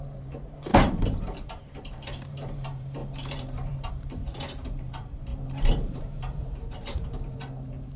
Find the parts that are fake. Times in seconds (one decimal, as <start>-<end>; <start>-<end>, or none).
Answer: 0.0-8.0

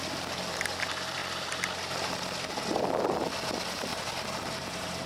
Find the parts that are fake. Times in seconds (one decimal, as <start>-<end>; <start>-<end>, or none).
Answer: 3.9-5.1

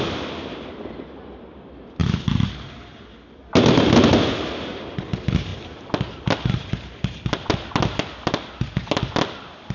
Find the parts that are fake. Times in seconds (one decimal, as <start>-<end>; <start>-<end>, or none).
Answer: none

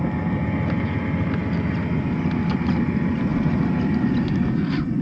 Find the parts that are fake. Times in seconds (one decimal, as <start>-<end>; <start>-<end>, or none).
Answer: none

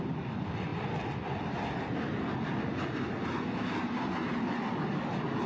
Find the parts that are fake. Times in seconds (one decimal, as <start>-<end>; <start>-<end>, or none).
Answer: none